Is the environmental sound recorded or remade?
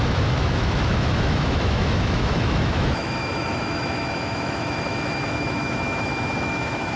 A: remade